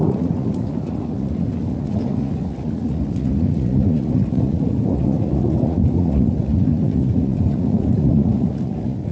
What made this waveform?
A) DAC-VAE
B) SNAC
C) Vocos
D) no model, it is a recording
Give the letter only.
C